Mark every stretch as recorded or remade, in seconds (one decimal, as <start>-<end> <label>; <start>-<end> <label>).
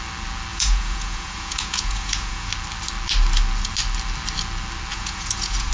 0.0-0.5 recorded; 0.5-2.5 remade; 2.5-4.9 recorded; 4.9-5.7 remade